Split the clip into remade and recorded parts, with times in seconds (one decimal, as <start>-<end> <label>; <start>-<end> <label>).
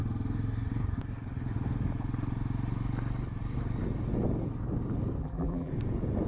0.0-5.2 recorded; 5.2-5.7 remade; 5.7-6.3 recorded